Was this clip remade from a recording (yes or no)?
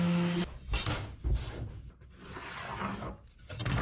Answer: no